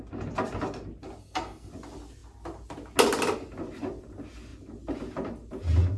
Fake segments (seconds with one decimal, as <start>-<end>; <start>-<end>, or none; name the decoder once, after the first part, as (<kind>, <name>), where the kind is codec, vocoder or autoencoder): 1.2-1.7 (codec, SNAC)